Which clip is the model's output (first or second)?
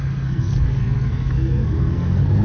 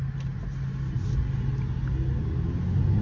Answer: first